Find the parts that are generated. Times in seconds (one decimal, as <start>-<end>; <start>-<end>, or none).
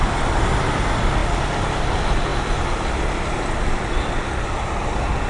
none